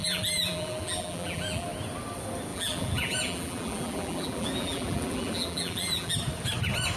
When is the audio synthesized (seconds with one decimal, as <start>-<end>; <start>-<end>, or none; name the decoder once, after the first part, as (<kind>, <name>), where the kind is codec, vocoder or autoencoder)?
0.0-1.7 (vocoder, BigVGAN v2); 2.5-6.1